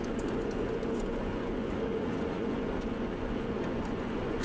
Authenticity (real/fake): fake